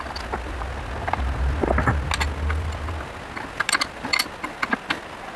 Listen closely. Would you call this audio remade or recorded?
recorded